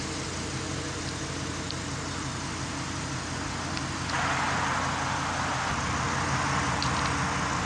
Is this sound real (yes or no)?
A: yes